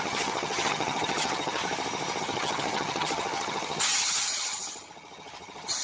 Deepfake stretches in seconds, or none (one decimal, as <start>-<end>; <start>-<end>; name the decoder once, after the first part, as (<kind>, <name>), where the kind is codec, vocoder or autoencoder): 0.0-1.6 (vocoder, HiFi-GAN); 2.2-5.8